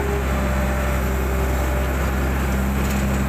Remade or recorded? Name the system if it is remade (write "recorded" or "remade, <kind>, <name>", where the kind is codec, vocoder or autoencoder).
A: recorded